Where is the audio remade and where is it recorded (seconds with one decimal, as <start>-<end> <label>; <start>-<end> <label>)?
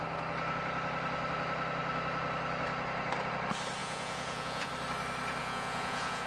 0.0-3.8 recorded; 3.8-4.7 remade; 4.7-5.4 recorded; 5.4-6.3 remade